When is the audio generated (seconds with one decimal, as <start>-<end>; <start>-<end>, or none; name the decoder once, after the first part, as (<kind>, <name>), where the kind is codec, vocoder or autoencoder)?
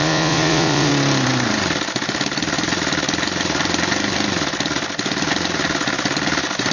0.0-0.9 (vocoder, Vocos)